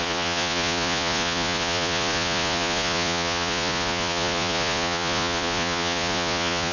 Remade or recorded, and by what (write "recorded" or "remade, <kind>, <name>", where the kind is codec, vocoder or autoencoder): remade, vocoder, Vocos